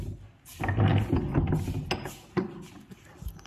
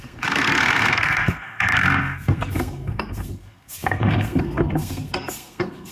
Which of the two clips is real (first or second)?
first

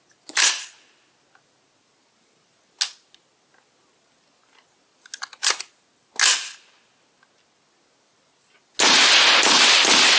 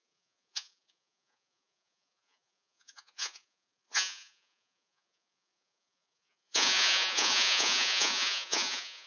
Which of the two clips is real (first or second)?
first